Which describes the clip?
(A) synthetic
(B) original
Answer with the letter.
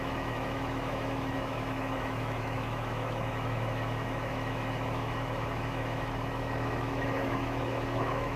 A